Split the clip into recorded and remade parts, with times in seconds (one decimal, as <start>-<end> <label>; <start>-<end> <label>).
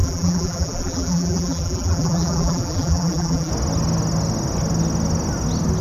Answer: 0.0-3.5 remade; 3.5-5.8 recorded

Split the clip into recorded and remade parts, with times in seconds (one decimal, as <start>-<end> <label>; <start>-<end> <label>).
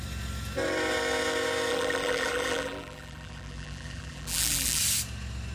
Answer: 0.0-1.7 recorded; 1.7-4.8 remade; 4.8-5.5 recorded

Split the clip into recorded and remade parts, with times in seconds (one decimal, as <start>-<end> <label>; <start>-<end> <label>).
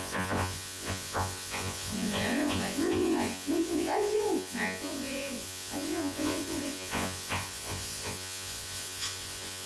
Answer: 0.0-9.7 remade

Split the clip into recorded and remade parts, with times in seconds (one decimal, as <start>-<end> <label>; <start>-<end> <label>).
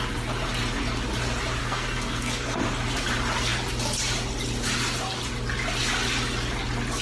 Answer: 0.0-1.6 recorded; 1.6-2.6 remade; 2.6-7.0 recorded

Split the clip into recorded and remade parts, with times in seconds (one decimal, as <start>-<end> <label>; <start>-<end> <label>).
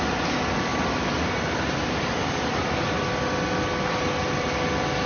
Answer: 0.0-5.1 recorded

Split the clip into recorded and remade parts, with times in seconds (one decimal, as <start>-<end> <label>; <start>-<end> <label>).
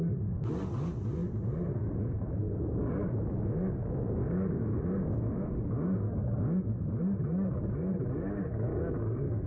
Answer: 0.0-3.8 recorded; 3.8-7.0 remade; 7.0-8.7 recorded; 8.7-9.5 remade